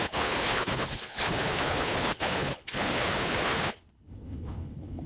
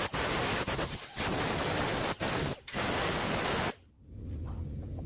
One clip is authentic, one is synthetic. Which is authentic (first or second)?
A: second